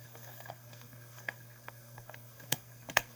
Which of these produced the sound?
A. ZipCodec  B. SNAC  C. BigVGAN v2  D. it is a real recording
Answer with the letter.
B